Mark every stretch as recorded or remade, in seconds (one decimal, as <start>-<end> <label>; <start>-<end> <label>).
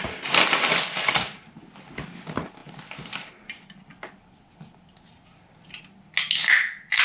0.0-7.0 recorded